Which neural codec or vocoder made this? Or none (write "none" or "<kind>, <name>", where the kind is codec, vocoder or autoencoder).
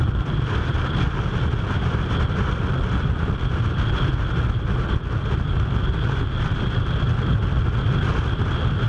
none